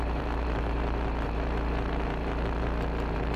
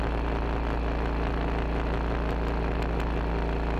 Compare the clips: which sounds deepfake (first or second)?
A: first